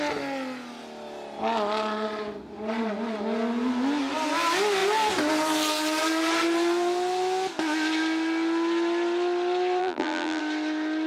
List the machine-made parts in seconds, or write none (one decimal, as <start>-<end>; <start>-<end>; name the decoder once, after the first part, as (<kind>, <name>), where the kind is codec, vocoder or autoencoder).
9.8-10.4 (vocoder, BigVGAN v2)